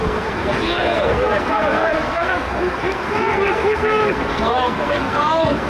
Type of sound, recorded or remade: remade